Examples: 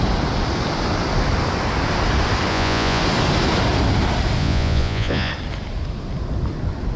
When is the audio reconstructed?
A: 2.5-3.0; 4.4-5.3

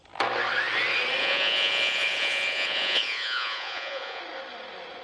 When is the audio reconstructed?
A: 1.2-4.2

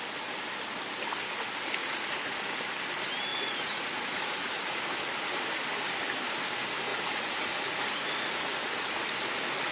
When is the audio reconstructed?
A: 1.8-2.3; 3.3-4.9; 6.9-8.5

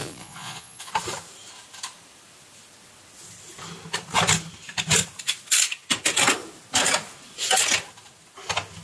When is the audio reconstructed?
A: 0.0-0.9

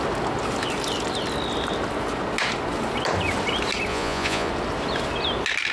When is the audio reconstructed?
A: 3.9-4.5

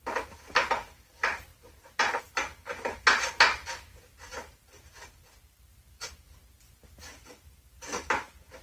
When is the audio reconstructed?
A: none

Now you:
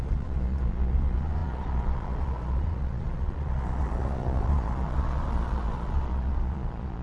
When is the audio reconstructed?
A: 0.0-7.0